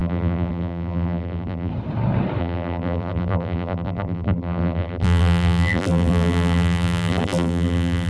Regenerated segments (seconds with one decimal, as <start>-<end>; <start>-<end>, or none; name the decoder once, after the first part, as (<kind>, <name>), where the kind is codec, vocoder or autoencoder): 0.0-1.7 (vocoder, BigVGAN v2); 2.4-8.1